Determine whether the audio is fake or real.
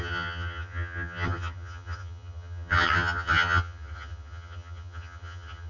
fake